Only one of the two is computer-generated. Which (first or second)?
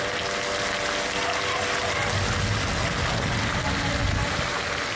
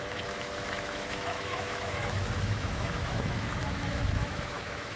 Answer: second